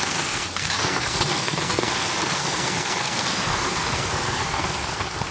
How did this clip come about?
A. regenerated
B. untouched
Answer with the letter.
A